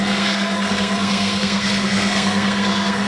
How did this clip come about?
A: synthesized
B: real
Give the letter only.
A